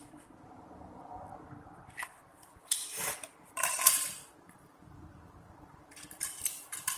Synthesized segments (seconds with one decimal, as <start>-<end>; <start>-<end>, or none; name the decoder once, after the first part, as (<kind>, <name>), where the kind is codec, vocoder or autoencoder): 2.6-7.0 (vocoder, BigVGAN v2)